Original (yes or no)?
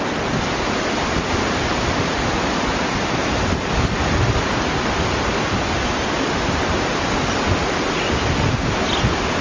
yes